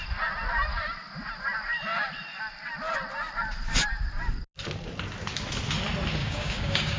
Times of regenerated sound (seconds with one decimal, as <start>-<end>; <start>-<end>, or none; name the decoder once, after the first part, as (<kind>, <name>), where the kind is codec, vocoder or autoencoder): 6.2-7.0 (codec, DAC)